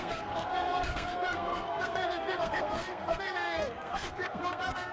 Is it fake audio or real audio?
fake